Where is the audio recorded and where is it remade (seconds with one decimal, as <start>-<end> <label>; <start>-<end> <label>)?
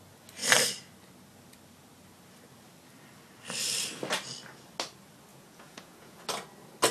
0.0-5.3 recorded; 5.3-6.2 remade; 6.2-6.9 recorded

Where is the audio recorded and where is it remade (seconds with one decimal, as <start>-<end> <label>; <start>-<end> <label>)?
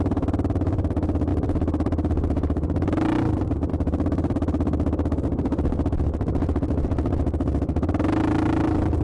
0.0-9.0 remade